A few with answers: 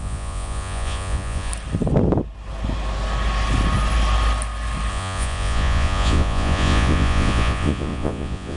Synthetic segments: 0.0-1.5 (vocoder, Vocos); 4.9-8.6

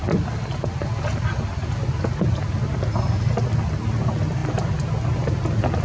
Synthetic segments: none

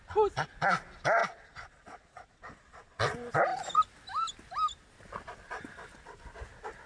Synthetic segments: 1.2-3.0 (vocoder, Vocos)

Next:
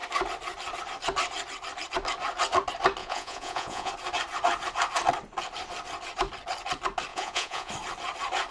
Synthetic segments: 3.0-3.9 (vocoder, Vocos); 7.1-7.7

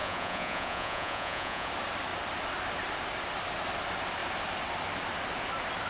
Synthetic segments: 0.0-1.7 (vocoder, Vocos)

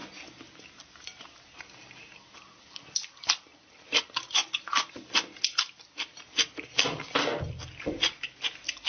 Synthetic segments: none

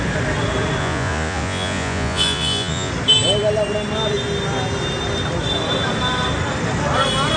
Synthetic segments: 0.8-2.9 (vocoder, Vocos)